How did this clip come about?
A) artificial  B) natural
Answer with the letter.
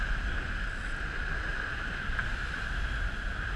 B